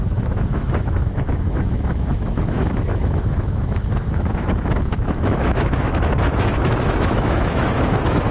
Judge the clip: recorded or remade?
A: remade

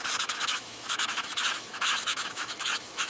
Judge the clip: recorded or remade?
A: remade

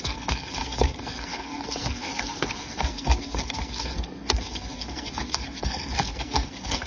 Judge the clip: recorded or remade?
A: remade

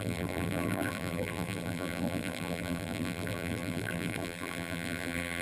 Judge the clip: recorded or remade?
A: remade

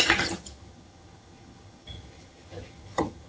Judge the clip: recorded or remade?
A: remade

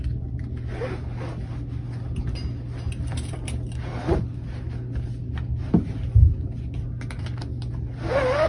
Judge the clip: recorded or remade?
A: recorded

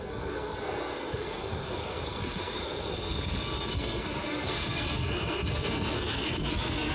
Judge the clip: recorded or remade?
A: remade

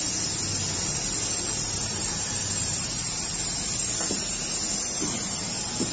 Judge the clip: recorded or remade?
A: recorded